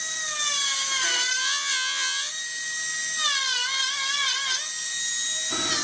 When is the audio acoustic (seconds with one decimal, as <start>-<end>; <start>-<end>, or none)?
0.0-1.4; 2.3-5.8